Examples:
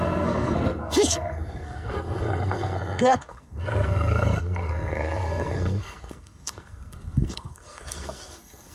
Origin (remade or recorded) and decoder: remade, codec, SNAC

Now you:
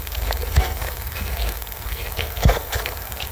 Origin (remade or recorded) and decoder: remade, codec, SNAC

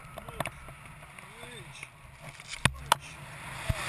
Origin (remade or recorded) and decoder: recorded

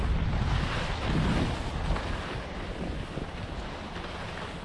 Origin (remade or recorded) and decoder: recorded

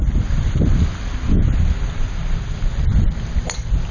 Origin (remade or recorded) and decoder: recorded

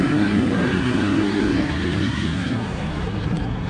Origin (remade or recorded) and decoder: remade, codec, SNAC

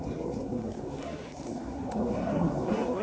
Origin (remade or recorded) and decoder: remade, codec, SNAC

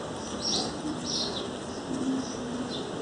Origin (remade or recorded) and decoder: recorded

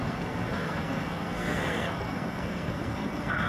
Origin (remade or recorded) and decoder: remade, codec, SNAC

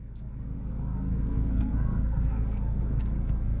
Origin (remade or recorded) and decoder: remade, codec, SNAC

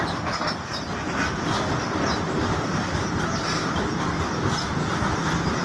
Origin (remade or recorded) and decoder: recorded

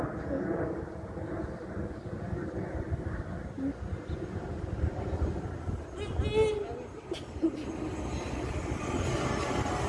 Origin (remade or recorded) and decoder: recorded